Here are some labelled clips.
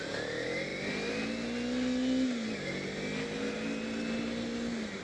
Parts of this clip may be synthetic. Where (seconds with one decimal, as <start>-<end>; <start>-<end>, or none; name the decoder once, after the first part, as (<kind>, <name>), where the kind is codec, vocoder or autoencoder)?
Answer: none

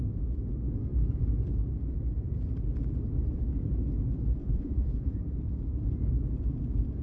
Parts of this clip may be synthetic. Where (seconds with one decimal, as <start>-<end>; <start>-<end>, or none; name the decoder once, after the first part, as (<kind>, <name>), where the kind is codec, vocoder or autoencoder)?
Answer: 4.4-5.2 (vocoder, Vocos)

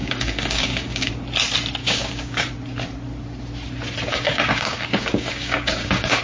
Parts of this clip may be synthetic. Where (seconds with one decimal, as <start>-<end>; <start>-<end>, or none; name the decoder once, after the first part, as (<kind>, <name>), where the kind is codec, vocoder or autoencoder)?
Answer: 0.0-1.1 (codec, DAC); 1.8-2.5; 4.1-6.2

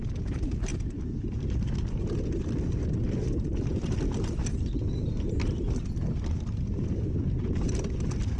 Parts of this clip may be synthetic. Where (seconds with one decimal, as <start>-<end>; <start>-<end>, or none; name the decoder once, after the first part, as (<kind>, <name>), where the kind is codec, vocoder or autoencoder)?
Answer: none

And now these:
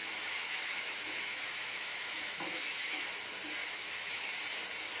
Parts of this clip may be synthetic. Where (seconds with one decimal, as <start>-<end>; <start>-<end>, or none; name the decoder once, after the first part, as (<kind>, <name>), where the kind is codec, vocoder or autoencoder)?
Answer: 0.0-3.0 (autoencoder, DAC-VAE); 3.6-4.3

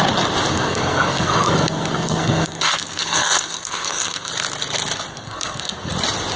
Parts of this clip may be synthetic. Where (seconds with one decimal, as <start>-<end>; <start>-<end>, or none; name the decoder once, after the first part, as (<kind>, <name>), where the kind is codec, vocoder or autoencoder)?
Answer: 0.5-4.3 (codec, SNAC); 5.1-5.9